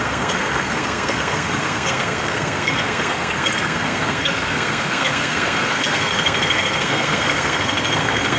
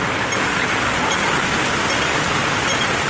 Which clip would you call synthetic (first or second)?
first